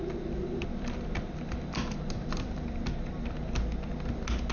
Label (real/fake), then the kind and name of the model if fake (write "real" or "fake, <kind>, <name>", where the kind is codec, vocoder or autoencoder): real